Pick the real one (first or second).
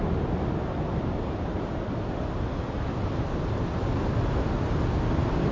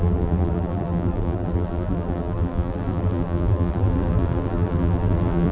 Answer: first